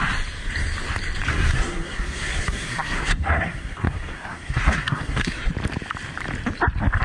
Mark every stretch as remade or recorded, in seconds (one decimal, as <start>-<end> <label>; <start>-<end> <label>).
0.0-1.3 recorded; 1.3-5.5 remade; 5.5-7.0 recorded